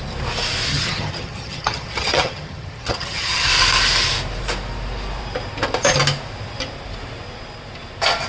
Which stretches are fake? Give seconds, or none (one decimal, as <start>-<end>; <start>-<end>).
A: 0.7-3.5